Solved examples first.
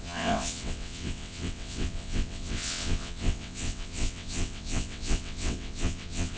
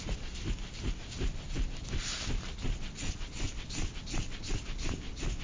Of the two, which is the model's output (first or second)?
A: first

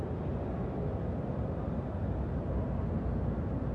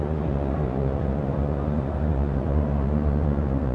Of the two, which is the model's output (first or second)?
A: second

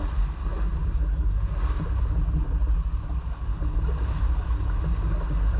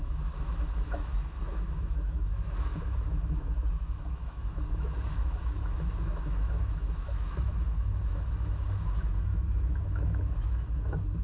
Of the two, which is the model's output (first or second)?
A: second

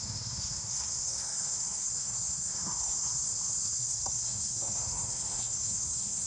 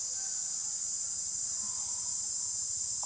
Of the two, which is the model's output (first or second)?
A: first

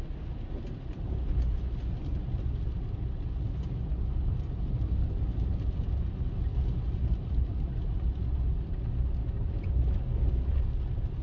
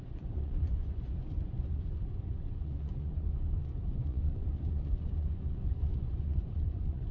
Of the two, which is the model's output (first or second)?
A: second